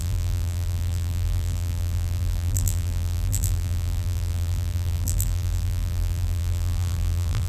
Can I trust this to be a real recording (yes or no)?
no